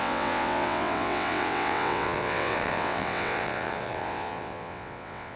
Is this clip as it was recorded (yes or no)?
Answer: no